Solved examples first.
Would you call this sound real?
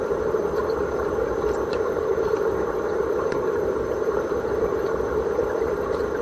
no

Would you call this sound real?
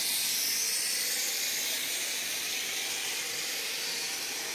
yes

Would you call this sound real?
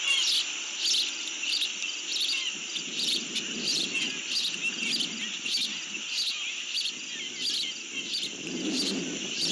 no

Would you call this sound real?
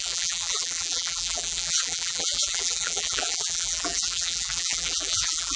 no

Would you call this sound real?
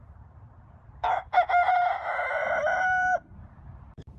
no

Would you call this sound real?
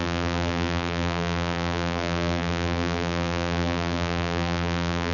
no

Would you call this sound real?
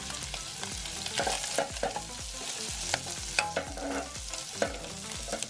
yes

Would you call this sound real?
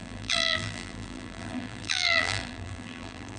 no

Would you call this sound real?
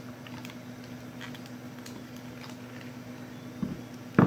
yes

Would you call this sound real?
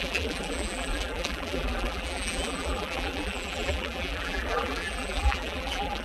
no